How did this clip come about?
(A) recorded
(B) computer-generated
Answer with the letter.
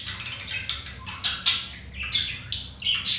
A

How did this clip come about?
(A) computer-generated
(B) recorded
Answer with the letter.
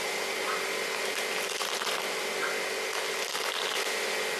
B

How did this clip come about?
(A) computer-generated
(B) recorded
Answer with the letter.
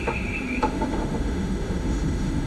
A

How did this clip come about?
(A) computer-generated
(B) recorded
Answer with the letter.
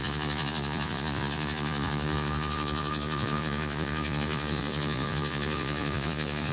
A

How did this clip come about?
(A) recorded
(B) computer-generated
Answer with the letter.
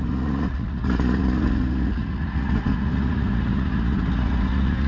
B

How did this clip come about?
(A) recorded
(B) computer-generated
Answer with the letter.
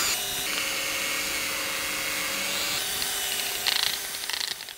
A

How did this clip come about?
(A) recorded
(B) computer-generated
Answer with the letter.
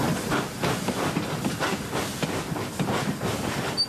A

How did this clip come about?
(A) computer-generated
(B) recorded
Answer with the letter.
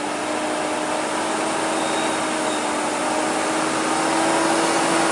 B